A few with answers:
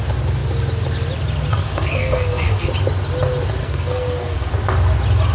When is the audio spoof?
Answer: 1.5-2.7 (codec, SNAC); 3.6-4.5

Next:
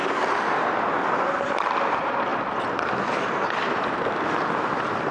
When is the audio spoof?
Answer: none

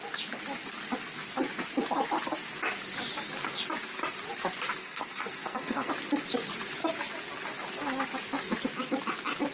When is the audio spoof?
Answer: 4.8-5.9 (codec, SNAC)

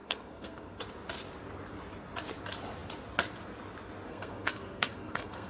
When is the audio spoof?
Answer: 0.0-0.8 (codec, SNAC); 4.1-5.5

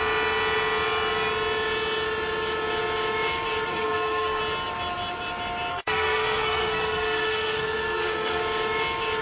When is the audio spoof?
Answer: 3.7-4.4 (codec, SNAC); 5.7-8.4

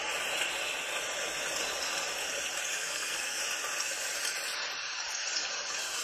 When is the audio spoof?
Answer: 2.7-3.4 (codec, SNAC)